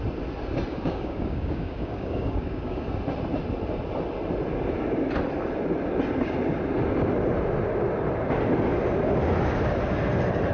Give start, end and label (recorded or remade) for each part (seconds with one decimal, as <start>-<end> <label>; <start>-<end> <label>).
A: 0.0-0.7 recorded; 0.7-2.9 remade; 2.9-10.5 recorded